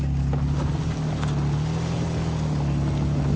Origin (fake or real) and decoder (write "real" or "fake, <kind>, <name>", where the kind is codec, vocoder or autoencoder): real